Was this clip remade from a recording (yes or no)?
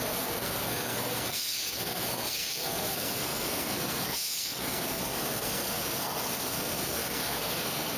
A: yes